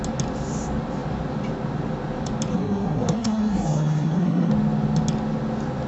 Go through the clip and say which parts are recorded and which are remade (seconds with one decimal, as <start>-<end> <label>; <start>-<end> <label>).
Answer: 0.0-2.5 recorded; 2.5-4.5 remade; 4.5-5.9 recorded